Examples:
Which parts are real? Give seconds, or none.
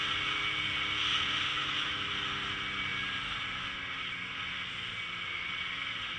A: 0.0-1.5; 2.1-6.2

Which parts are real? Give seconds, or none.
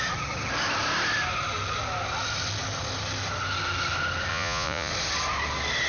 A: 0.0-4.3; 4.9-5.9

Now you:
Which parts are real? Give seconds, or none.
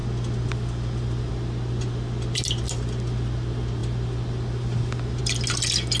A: 0.0-6.0